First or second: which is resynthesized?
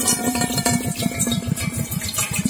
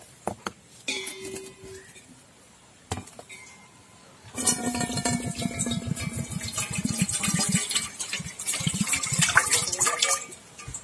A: first